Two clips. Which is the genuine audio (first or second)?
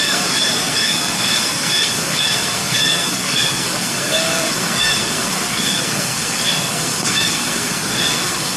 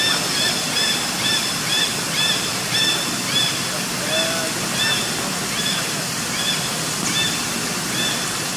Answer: second